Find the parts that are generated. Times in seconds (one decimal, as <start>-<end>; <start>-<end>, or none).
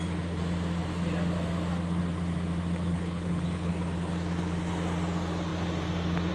2.9-3.7